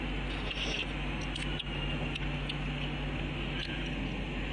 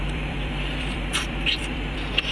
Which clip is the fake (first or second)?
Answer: second